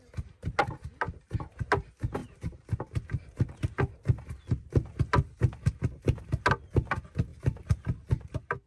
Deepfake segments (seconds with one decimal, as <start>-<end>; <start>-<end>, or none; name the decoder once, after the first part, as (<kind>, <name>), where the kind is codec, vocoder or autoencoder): none